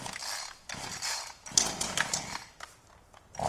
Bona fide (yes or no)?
yes